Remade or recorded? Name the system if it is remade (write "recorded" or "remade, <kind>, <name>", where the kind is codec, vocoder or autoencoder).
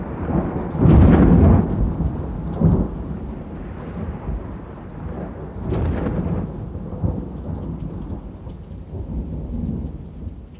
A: remade, vocoder, BigVGAN v2